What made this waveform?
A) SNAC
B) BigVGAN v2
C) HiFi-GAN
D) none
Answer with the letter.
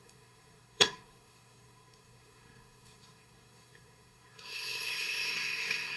A